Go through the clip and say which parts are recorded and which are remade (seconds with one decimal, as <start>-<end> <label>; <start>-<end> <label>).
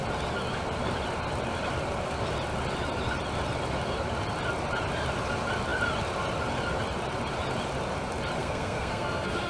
0.0-8.4 recorded; 8.4-9.5 remade